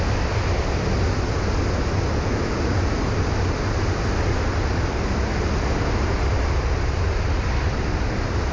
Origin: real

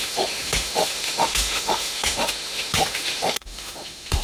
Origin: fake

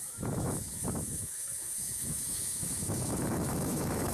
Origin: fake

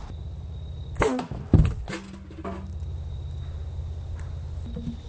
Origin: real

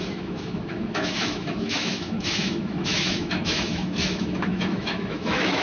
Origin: fake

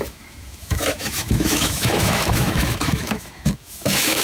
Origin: fake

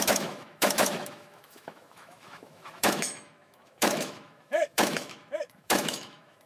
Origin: fake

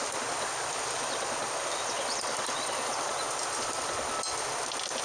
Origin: real